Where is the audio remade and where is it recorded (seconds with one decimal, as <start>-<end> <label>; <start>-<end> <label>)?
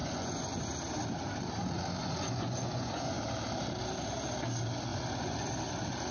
0.0-0.6 remade; 0.6-2.0 recorded; 2.0-3.2 remade; 3.2-4.9 recorded; 4.9-5.5 remade; 5.5-6.1 recorded